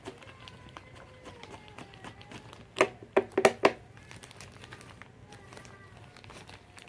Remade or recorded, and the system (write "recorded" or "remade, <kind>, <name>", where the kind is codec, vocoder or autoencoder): recorded